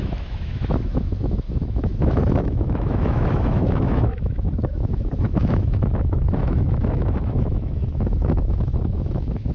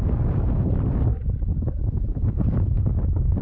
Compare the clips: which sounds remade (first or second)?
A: first